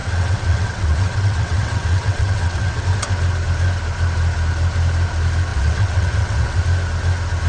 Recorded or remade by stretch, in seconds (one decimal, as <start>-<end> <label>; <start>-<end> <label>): 0.0-2.8 remade; 2.8-5.5 recorded; 5.5-6.6 remade; 6.6-7.5 recorded

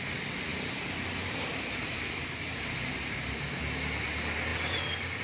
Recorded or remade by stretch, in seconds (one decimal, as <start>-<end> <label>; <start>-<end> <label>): 0.0-0.5 recorded; 0.5-3.6 remade; 3.6-5.2 recorded

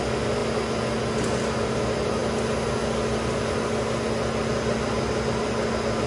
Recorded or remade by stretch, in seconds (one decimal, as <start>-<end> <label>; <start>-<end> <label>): 0.0-6.1 recorded

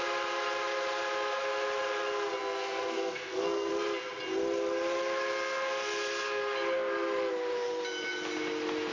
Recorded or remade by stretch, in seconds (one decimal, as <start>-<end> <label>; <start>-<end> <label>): 0.0-2.4 recorded; 2.4-3.7 remade; 3.7-8.9 recorded

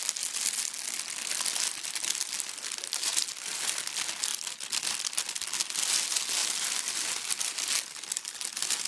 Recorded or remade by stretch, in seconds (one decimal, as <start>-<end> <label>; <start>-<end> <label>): 0.0-4.3 recorded; 4.3-4.8 remade; 4.8-6.4 recorded; 6.4-7.7 remade; 7.7-8.9 recorded

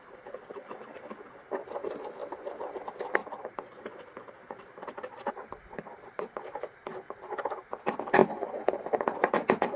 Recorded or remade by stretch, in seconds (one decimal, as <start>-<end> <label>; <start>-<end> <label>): 0.0-0.5 recorded; 0.5-1.6 remade; 1.6-2.2 recorded; 2.2-2.8 remade; 2.8-3.2 recorded; 3.2-6.4 remade; 6.4-9.8 recorded